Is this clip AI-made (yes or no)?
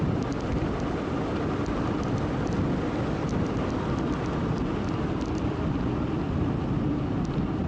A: no